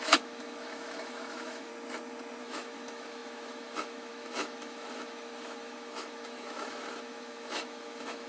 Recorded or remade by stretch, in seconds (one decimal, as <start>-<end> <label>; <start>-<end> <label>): 0.0-1.7 remade; 1.7-2.4 recorded; 2.4-8.3 remade